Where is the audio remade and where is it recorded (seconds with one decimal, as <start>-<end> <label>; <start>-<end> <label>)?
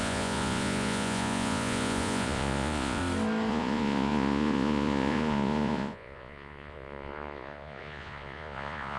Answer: 0.0-3.0 remade; 3.0-3.5 recorded; 3.5-9.0 remade